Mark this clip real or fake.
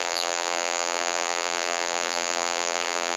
fake